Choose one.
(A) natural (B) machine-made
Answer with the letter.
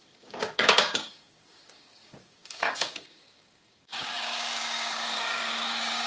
B